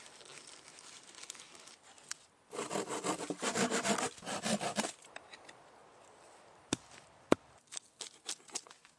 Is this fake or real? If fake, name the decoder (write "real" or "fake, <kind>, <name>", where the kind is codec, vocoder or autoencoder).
real